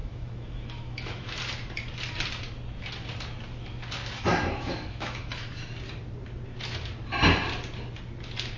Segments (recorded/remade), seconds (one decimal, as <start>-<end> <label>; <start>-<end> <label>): 0.0-1.4 remade; 1.4-4.3 recorded; 4.3-5.7 remade; 5.7-8.6 recorded